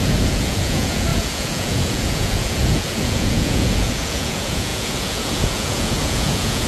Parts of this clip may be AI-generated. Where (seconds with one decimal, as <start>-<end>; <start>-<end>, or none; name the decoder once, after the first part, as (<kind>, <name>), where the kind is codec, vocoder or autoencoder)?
0.0-6.7 (vocoder, Vocos)